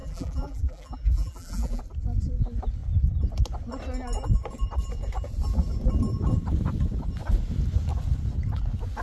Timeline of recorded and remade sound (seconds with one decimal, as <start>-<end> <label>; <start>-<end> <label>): 0.0-1.8 remade; 1.8-9.0 recorded